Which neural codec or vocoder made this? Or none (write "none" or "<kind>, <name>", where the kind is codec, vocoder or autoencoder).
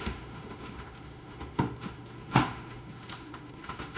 autoencoder, DAC-VAE